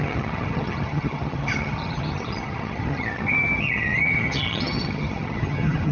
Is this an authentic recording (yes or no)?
no